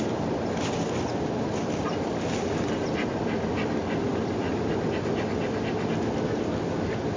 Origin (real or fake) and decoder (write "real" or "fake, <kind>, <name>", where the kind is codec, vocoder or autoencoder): real